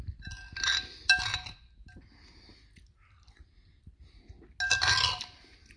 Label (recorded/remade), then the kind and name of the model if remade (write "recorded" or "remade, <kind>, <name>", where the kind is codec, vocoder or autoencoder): recorded